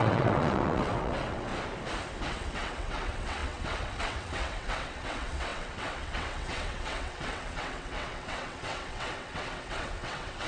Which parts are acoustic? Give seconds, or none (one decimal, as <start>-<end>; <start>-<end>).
1.5-2.3